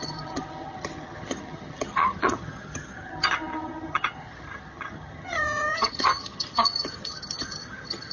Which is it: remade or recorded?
remade